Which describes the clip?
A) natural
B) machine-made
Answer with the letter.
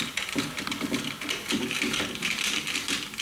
B